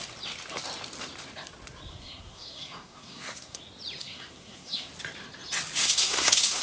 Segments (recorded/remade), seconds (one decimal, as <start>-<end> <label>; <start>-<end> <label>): 0.0-1.9 recorded; 1.9-3.6 remade; 3.6-4.0 recorded; 4.0-4.9 remade; 4.9-5.8 recorded; 5.8-6.6 remade